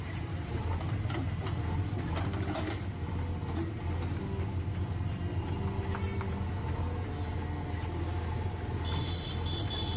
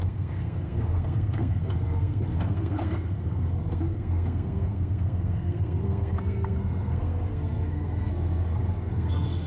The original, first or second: first